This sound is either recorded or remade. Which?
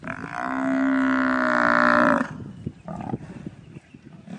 recorded